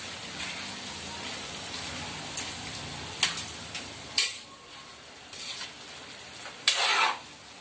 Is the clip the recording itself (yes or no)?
yes